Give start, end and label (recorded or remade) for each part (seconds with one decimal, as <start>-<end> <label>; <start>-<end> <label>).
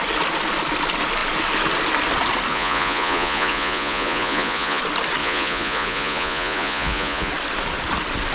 0.0-2.5 recorded; 2.5-4.8 remade; 4.8-5.2 recorded; 5.2-7.3 remade; 7.3-8.3 recorded